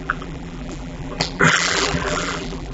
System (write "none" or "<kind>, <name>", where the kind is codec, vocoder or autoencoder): vocoder, BigVGAN v2